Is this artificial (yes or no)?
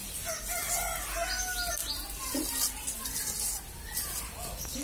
no